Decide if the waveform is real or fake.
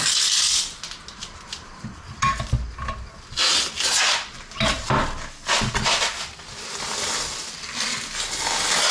real